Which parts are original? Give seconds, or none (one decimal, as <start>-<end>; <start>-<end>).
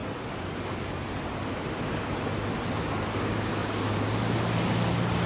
0.0-5.3